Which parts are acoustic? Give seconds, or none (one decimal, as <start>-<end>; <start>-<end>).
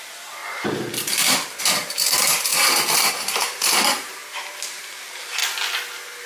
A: 0.4-1.6; 2.5-3.1; 4.2-5.0; 5.4-6.3